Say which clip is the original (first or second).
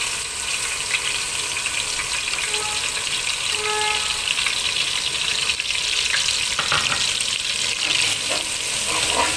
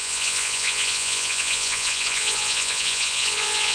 first